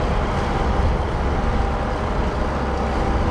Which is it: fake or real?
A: real